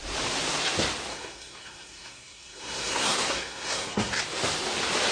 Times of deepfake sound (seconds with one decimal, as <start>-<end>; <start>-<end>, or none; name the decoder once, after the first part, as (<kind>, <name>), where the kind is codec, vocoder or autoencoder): 1.1-4.2 (codec, SNAC)